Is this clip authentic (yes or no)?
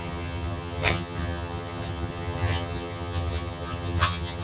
no